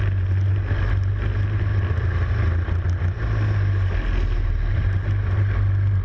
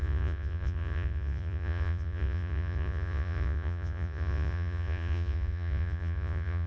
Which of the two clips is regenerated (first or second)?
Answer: second